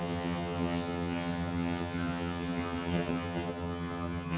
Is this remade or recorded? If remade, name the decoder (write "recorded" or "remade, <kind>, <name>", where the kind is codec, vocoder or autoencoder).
remade, vocoder, HiFi-GAN